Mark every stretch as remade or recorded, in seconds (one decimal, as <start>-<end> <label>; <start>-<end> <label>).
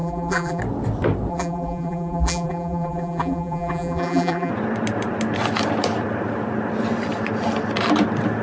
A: 0.0-0.6 remade; 0.6-1.3 recorded; 1.3-4.5 remade; 4.5-8.4 recorded